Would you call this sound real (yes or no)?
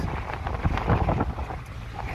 yes